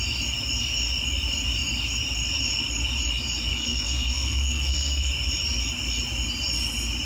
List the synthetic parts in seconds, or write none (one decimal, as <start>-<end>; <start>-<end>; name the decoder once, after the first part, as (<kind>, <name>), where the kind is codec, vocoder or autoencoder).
3.5-5.1 (codec, SNAC)